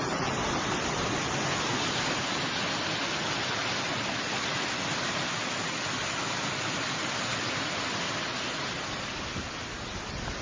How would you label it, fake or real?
real